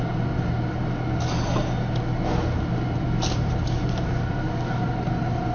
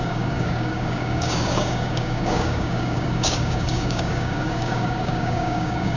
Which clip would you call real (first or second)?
first